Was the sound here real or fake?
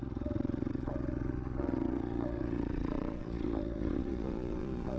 fake